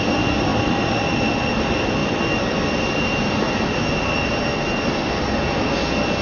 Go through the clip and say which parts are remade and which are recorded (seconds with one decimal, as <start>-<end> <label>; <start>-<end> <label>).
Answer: 0.0-6.2 recorded